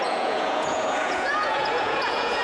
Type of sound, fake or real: fake